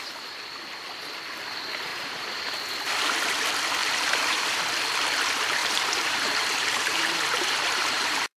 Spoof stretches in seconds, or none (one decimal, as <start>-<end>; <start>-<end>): 1.9-2.6; 3.8-4.6; 5.6-8.4